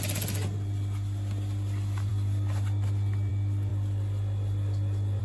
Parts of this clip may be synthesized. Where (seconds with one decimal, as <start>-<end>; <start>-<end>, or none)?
none